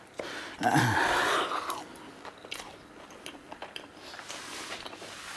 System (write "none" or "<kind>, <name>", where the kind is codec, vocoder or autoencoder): none